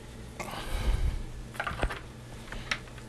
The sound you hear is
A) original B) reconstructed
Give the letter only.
A